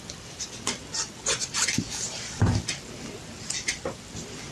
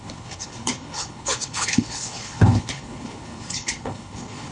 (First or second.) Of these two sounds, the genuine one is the first